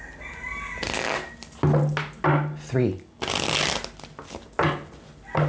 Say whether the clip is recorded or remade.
recorded